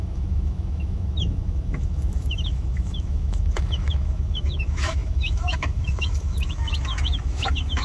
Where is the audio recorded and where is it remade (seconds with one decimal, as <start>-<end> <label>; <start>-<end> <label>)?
0.0-7.8 remade